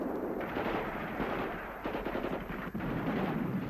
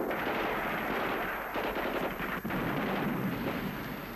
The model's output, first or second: first